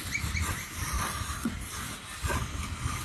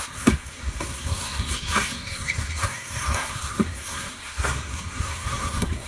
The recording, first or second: first